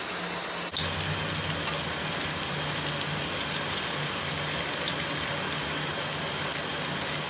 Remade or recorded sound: recorded